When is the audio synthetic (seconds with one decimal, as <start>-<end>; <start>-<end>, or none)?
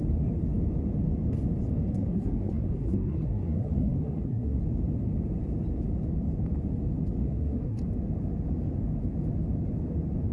1.9-4.6; 7.2-7.8